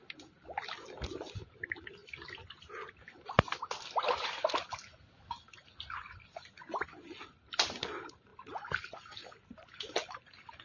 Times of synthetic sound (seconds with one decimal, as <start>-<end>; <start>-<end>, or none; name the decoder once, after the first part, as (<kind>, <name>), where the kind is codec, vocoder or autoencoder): none